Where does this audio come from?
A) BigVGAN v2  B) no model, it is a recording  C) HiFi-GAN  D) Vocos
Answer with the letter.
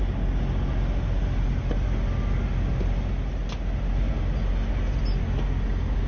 B